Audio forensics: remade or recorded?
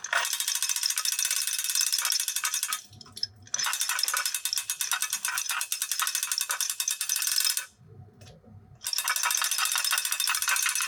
recorded